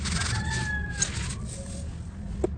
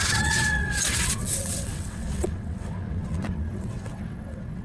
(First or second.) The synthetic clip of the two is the second